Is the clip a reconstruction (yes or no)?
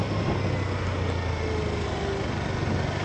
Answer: no